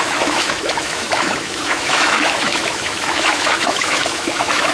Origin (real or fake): fake